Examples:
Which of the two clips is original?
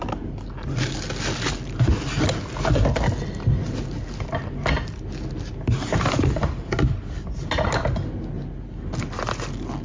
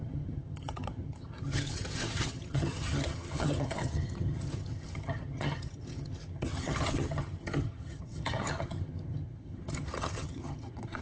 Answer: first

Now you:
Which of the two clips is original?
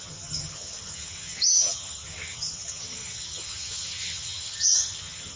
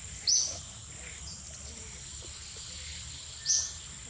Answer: second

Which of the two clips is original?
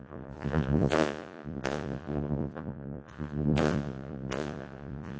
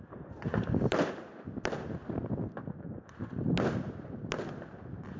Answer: second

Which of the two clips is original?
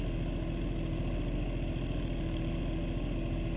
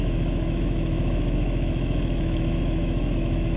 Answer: first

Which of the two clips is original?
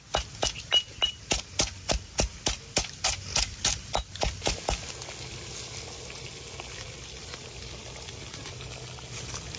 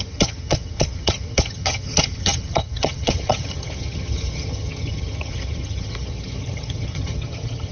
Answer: first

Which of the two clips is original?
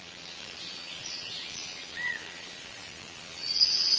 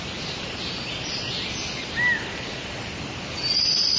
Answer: second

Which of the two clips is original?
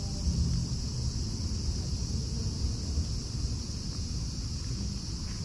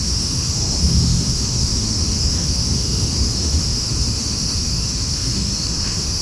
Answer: first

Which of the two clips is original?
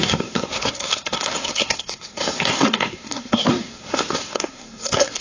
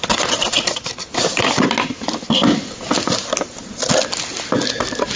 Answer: second